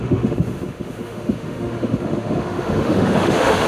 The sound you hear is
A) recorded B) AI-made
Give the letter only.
B